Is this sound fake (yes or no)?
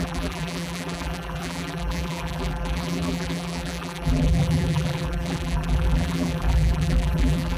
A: yes